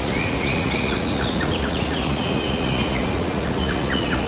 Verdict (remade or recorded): remade